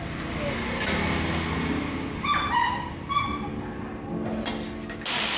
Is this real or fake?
real